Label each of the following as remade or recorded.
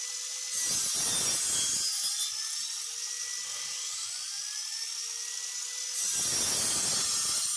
recorded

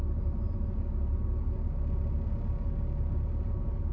recorded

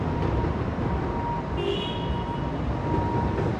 recorded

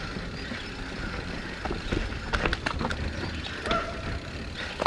recorded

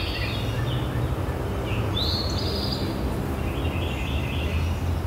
recorded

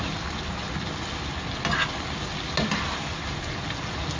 recorded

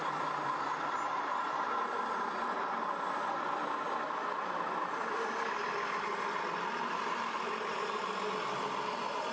recorded